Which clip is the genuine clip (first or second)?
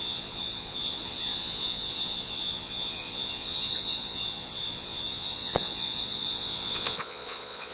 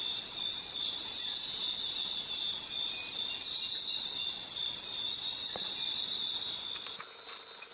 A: second